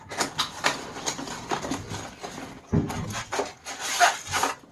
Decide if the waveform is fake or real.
real